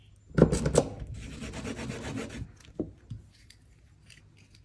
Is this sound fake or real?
real